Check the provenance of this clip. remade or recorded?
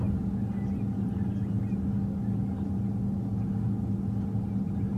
recorded